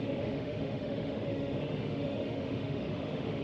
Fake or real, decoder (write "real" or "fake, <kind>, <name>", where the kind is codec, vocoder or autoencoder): fake, autoencoder, DAC-VAE